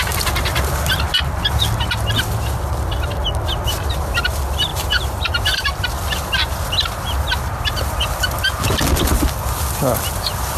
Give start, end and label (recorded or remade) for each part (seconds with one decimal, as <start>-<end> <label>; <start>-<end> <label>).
0.0-4.7 recorded; 4.7-5.3 remade; 5.3-10.6 recorded